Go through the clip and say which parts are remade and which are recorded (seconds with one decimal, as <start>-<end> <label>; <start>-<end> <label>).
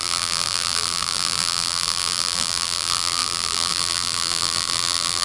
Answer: 0.0-5.2 remade